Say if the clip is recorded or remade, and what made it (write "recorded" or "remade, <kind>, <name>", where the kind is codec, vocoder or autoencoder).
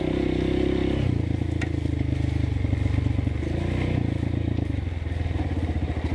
recorded